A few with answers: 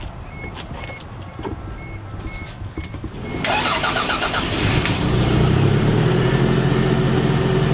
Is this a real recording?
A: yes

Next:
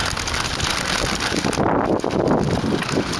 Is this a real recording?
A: yes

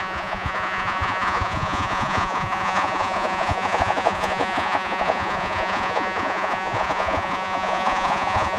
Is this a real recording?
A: no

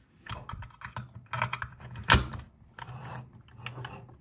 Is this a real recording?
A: yes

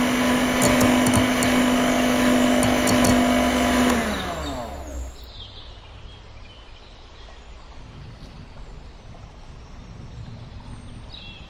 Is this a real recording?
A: yes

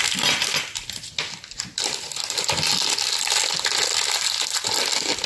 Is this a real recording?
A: yes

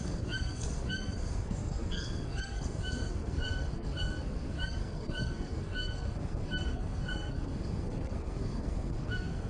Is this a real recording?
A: no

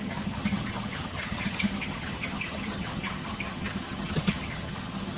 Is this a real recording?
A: no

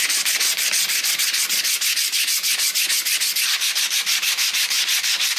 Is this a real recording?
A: yes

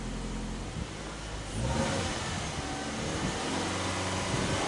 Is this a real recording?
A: yes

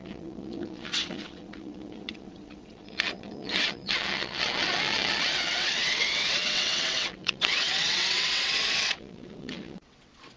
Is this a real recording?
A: no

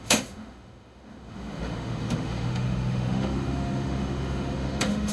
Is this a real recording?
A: no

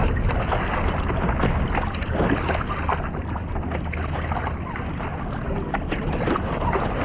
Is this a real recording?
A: yes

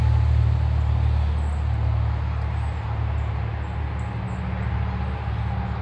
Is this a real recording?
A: yes